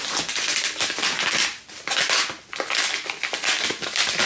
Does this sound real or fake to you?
real